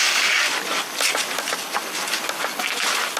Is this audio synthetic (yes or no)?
no